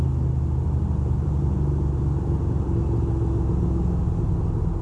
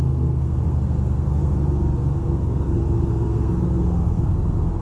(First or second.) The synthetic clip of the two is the second